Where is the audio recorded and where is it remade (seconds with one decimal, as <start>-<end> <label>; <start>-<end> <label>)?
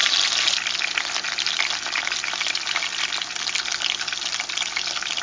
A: 0.0-5.2 recorded